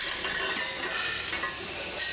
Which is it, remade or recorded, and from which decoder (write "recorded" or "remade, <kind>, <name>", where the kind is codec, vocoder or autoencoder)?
recorded